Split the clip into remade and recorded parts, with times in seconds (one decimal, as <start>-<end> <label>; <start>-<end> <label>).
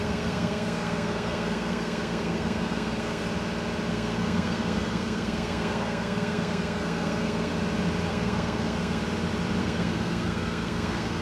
0.0-3.2 remade; 3.2-3.9 recorded; 3.9-7.5 remade; 7.5-8.1 recorded; 8.1-9.0 remade; 9.0-9.6 recorded; 9.6-11.2 remade